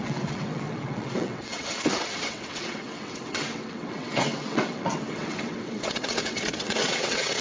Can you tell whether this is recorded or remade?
remade